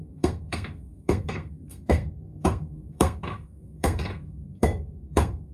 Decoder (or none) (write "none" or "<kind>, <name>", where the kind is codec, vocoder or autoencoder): codec, SNAC